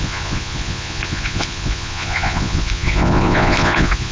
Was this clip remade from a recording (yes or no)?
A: yes